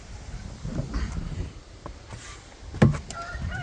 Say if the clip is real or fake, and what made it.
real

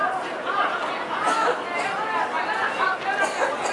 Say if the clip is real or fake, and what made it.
real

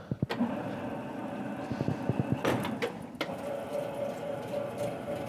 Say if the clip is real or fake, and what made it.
real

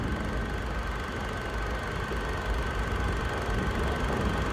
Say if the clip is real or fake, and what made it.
real